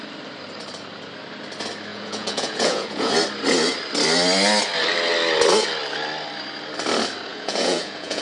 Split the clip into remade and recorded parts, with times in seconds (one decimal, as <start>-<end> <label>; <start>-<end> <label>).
0.0-1.9 recorded; 1.9-3.1 remade; 3.1-7.3 recorded; 7.3-8.2 remade